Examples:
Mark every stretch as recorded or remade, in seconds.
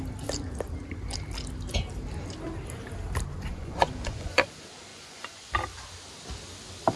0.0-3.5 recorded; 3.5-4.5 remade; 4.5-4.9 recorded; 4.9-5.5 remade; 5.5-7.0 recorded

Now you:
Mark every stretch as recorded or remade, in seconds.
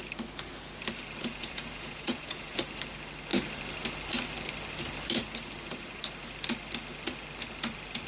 0.0-1.2 recorded; 1.2-2.6 remade; 2.6-8.1 recorded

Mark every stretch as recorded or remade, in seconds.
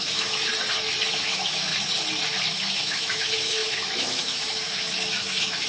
0.0-0.5 remade; 0.5-1.1 recorded; 1.1-1.7 remade; 1.7-2.5 recorded; 2.5-5.7 remade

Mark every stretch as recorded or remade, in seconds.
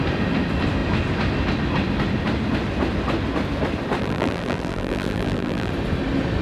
0.0-4.0 recorded; 4.0-5.7 remade; 5.7-6.4 recorded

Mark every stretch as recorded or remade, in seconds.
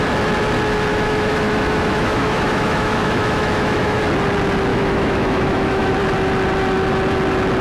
0.0-0.9 recorded; 0.9-4.0 remade; 4.0-4.7 recorded; 4.7-5.9 remade; 5.9-7.6 recorded